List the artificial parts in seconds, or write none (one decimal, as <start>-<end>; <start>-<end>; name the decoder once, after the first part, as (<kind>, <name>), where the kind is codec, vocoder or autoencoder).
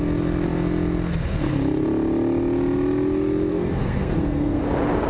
3.5-4.6 (codec, SNAC)